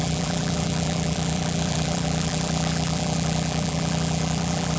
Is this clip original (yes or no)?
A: no